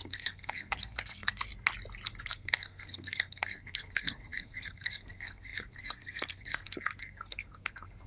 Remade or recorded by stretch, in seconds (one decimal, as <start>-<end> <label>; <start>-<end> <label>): 0.0-1.5 remade; 1.5-2.2 recorded; 2.2-8.1 remade